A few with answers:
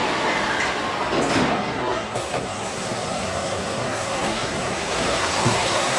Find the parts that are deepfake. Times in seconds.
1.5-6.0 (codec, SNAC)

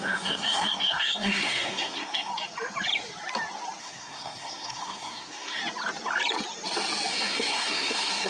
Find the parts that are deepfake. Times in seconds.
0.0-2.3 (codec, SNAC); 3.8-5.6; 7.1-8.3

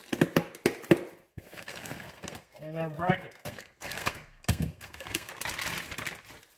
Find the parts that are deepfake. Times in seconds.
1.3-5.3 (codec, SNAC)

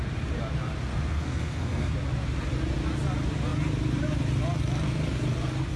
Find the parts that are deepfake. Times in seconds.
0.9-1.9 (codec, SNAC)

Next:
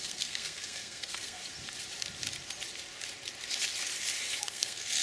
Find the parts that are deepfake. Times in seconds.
0.0-1.4 (codec, SNAC); 4.4-5.0

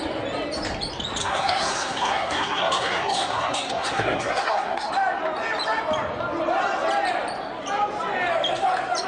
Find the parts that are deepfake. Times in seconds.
1.2-4.9 (codec, SNAC)